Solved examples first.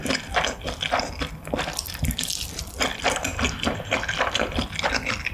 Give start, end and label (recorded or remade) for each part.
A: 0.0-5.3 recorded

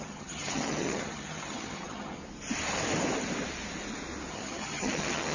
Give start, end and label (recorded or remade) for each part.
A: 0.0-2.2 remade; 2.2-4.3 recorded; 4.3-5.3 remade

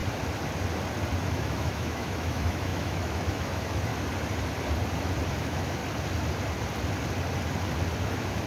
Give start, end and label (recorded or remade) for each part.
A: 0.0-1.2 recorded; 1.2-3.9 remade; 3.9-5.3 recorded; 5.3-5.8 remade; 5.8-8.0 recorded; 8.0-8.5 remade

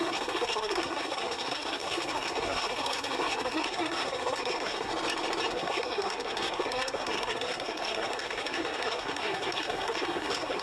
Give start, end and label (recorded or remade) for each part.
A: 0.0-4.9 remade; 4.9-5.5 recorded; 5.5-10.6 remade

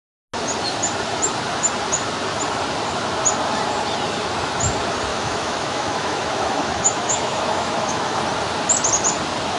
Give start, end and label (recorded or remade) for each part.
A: 0.0-5.1 recorded; 5.1-8.2 remade; 8.2-9.6 recorded